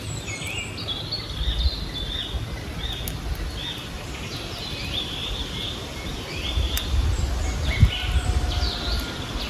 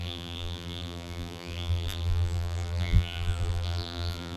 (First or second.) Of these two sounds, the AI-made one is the second